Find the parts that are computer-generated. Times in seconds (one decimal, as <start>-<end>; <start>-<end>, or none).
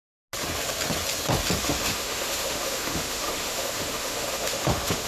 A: 1.6-5.1